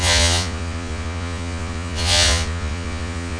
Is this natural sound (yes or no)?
no